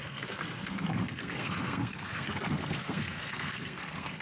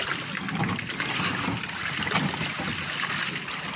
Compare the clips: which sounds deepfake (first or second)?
first